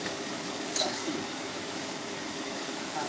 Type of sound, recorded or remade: remade